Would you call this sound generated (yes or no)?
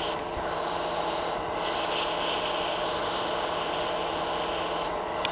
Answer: no